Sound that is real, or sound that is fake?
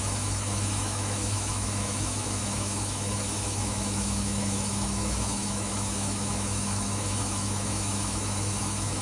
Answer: fake